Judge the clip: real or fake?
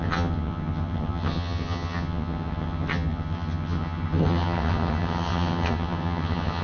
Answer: fake